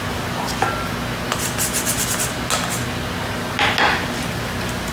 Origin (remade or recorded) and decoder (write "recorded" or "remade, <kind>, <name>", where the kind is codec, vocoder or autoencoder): recorded